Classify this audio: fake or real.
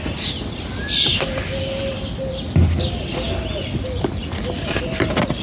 real